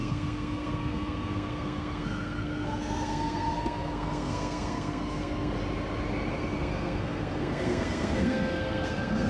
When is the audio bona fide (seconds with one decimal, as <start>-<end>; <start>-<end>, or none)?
5.5-6.3